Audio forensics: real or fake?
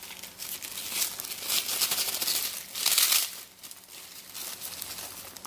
real